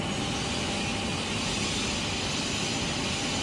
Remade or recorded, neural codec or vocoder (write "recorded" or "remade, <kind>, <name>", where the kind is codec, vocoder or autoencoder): recorded